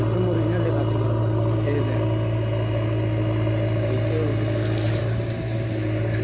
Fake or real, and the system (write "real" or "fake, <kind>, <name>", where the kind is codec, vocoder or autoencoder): real